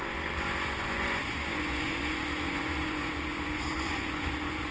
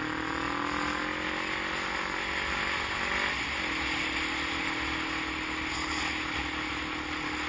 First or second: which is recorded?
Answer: second